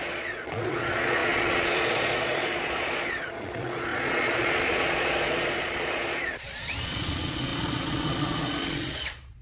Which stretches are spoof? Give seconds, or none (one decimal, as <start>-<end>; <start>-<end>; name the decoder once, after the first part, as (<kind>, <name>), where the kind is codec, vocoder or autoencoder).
0.0-9.4 (vocoder, Vocos)